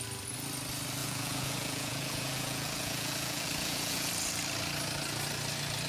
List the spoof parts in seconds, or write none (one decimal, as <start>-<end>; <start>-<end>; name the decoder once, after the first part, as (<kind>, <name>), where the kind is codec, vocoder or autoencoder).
1.0-4.1 (vocoder, Vocos)